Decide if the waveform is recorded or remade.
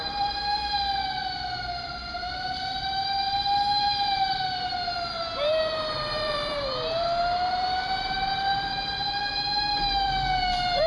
remade